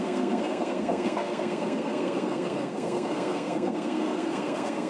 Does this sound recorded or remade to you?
remade